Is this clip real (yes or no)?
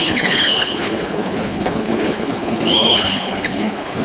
no